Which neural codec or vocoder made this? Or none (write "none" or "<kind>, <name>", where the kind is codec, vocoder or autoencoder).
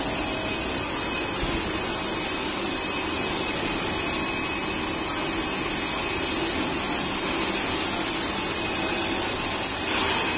none